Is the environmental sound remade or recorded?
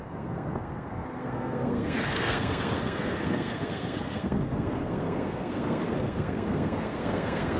remade